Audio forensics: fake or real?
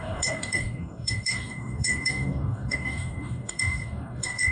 fake